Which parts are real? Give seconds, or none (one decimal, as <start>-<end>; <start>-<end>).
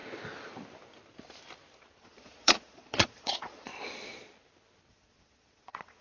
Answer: 0.0-2.0; 3.7-4.9